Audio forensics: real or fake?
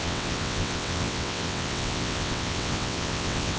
fake